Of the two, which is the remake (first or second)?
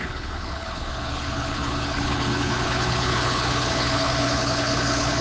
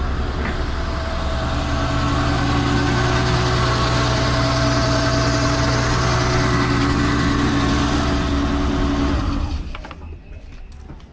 first